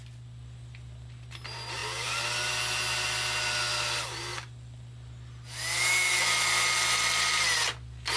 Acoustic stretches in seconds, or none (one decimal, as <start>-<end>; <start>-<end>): 0.0-8.2